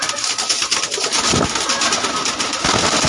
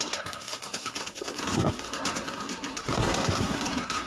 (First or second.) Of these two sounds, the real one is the first